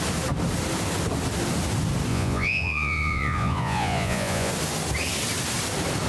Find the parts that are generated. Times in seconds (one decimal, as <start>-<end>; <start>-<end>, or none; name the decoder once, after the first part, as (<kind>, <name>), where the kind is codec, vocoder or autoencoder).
2.1-4.5 (vocoder, Vocos)